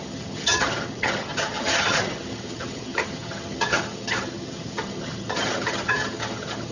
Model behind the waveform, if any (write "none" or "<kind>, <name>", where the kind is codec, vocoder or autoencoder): vocoder, HiFi-GAN